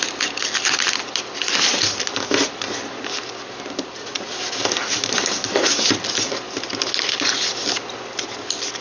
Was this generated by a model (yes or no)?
no